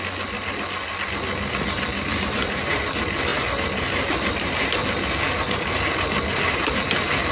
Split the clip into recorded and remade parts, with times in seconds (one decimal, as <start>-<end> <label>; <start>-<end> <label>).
0.0-2.1 recorded; 2.1-2.8 remade; 2.8-7.3 recorded